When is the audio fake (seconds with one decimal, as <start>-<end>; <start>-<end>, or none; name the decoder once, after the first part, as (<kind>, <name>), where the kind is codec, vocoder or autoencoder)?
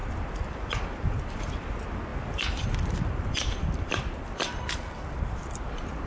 0.0-1.4 (vocoder, BigVGAN v2); 2.1-6.1